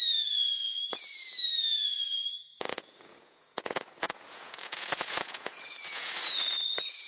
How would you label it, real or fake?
fake